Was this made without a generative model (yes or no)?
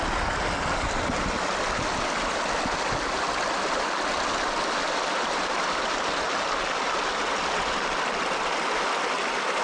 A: yes